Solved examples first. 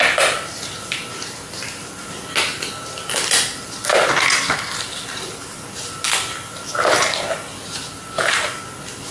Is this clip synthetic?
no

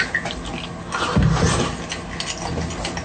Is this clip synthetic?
no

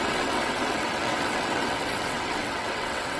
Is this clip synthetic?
yes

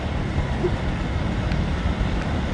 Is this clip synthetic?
no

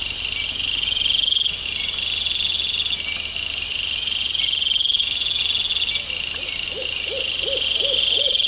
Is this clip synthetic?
no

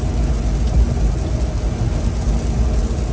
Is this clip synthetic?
no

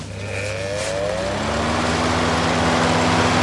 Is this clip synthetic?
no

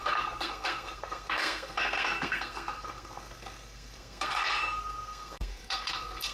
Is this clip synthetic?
yes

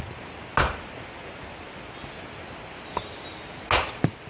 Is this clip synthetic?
no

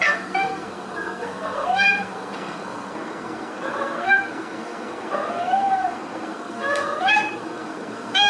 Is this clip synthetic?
yes